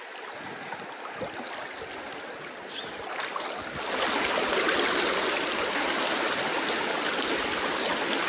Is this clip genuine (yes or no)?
yes